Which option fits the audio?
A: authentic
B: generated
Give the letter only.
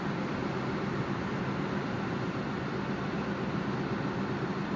A